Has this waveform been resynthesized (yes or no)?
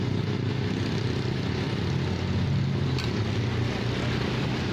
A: no